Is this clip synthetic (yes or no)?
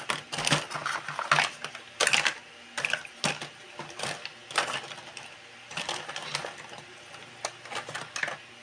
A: no